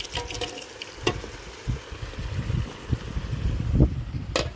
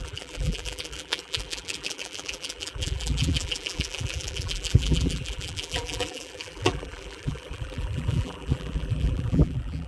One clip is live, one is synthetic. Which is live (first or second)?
first